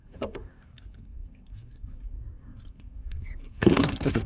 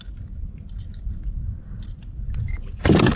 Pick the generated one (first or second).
first